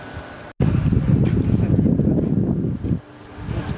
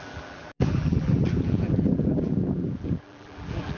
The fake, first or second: second